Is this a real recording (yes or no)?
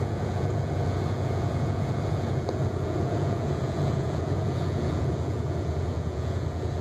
no